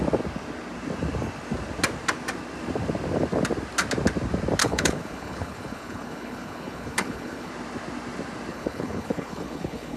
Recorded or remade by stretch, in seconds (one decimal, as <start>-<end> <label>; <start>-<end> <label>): 0.0-4.6 recorded; 4.6-7.5 remade; 7.5-8.5 recorded; 8.5-10.0 remade